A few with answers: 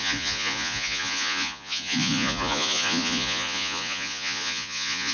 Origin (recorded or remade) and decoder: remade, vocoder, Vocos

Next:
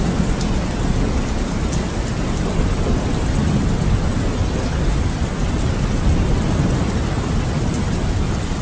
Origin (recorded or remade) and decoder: recorded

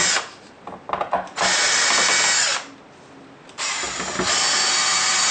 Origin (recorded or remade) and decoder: recorded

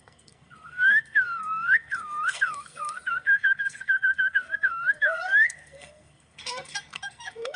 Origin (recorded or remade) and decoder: remade, codec, SNAC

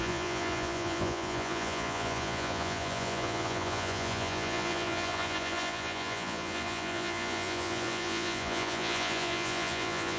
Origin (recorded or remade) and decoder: remade, vocoder, Vocos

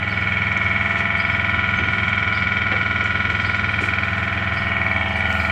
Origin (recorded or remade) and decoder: recorded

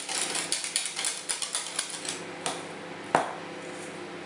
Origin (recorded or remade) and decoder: recorded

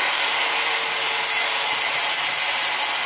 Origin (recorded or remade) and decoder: recorded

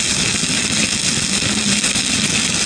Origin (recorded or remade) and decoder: recorded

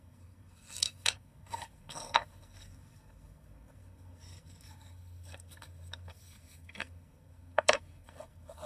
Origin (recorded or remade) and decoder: remade, codec, SNAC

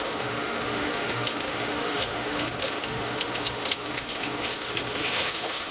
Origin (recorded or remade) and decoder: remade, autoencoder, DAC-VAE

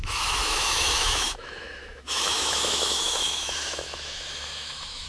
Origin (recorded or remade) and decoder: remade, autoencoder, DAC-VAE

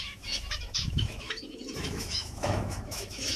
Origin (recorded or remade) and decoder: remade, autoencoder, DAC-VAE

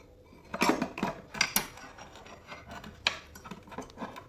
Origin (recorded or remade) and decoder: recorded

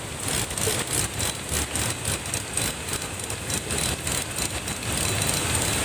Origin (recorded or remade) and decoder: recorded